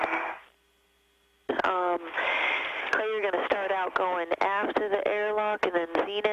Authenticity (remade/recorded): recorded